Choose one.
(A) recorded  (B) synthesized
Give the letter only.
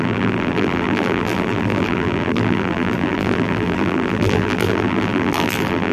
B